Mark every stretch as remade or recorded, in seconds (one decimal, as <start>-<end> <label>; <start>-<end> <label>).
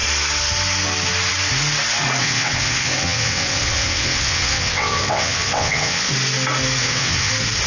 0.0-2.2 recorded; 2.2-6.1 remade; 6.1-6.8 recorded; 6.8-7.3 remade; 7.3-7.7 recorded